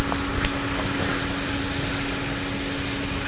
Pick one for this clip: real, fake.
real